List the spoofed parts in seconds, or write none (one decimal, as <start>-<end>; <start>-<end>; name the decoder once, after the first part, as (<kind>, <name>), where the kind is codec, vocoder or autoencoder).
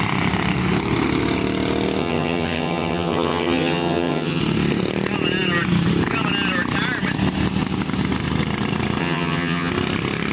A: 2.0-4.4 (vocoder, HiFi-GAN); 9.0-9.7